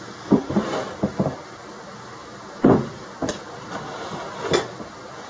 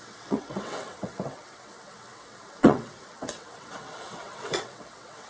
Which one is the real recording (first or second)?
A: first